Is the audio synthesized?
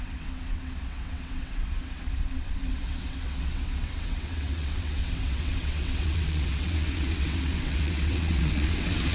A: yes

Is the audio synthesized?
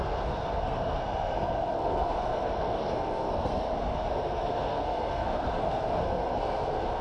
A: yes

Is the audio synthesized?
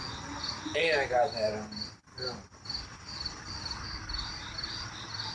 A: no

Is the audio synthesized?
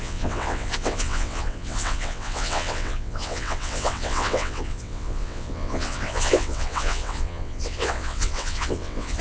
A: yes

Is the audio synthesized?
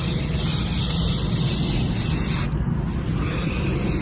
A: no